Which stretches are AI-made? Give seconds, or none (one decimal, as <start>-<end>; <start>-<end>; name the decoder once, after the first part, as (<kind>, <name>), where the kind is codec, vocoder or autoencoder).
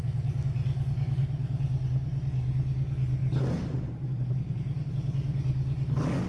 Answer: 1.2-1.8 (vocoder, BigVGAN v2); 3.2-4.9